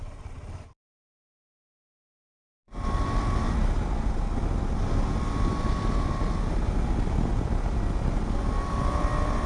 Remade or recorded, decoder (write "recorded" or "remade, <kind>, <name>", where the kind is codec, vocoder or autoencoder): recorded